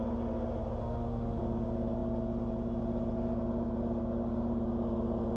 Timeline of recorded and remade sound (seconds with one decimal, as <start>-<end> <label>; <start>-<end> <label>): 0.0-0.8 recorded; 0.8-1.4 remade; 1.4-5.4 recorded